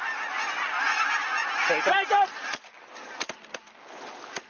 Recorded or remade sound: recorded